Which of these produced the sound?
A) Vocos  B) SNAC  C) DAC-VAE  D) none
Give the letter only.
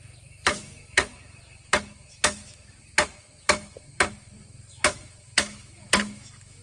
C